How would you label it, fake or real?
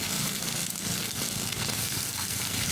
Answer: fake